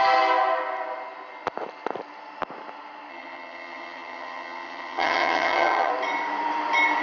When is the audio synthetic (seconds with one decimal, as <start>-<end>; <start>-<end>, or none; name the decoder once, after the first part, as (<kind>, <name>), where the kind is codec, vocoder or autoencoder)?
3.1-5.9 (vocoder, HiFi-GAN)